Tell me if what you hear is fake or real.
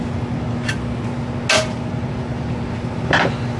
real